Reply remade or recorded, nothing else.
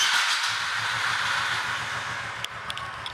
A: recorded